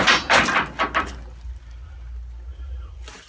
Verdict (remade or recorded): recorded